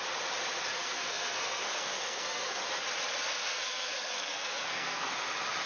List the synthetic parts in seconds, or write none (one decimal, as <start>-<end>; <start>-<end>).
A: 0.7-2.6; 3.4-5.1